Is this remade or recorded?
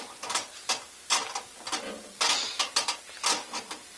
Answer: recorded